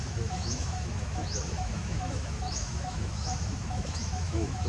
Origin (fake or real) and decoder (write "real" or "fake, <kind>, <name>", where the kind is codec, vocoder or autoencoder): fake, autoencoder, DAC-VAE